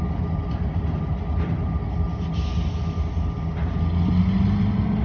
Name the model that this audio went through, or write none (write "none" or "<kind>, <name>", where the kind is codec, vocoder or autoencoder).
none